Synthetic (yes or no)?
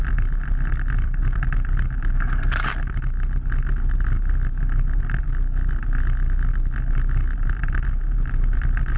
no